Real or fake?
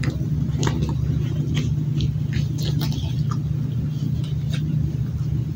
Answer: real